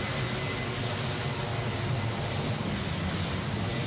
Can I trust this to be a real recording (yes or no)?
yes